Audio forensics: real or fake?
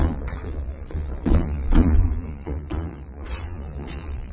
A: fake